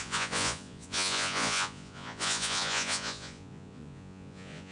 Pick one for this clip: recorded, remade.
remade